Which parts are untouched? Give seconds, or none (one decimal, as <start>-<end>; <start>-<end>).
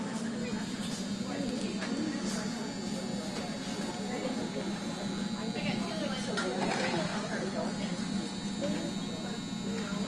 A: 0.0-7.1; 7.7-10.1